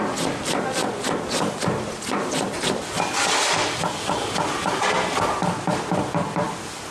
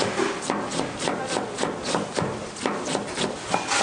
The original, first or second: second